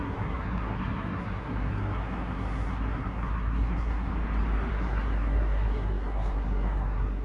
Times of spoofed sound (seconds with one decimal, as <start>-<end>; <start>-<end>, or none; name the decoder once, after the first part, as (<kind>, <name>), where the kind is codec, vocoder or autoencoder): 0.0-4.1 (codec, SNAC); 4.7-7.2